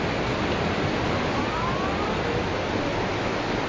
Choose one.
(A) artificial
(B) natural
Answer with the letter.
B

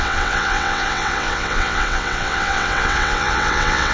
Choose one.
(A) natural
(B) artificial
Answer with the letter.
B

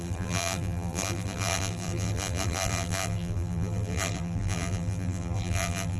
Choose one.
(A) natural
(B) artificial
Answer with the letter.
B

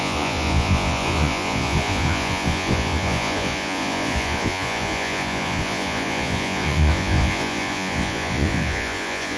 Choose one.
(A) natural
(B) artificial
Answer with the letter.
B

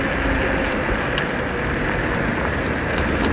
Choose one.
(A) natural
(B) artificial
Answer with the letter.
A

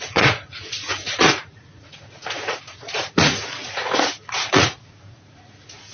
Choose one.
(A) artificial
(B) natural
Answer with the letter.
A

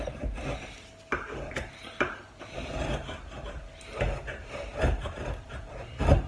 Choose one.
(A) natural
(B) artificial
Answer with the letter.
A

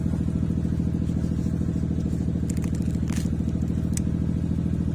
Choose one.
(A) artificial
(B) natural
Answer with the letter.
B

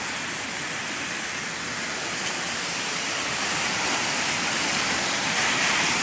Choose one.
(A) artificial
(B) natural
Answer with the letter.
A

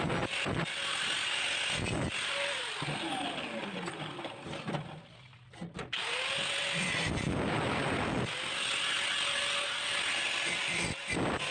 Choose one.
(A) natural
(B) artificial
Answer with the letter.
A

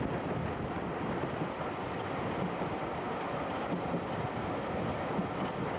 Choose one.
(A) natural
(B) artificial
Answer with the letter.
A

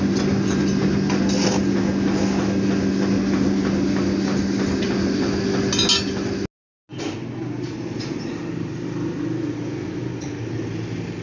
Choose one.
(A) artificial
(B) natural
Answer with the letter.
B